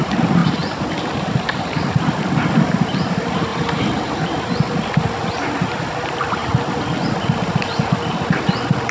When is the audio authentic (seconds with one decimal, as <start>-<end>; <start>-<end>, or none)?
0.4-1.7; 3.5-5.8; 6.4-7.9